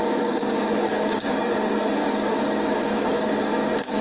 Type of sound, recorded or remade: remade